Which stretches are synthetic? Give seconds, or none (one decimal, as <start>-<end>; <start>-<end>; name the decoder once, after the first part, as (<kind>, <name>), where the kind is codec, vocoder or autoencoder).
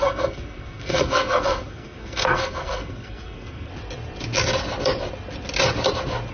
0.0-3.7 (codec, SNAC)